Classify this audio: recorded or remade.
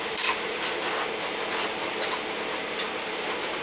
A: recorded